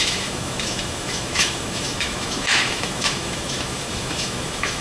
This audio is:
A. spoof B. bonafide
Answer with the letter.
A